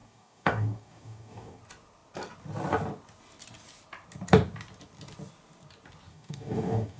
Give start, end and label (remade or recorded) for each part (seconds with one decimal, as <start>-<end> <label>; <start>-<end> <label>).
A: 0.0-1.6 remade; 1.6-6.1 recorded; 6.1-7.0 remade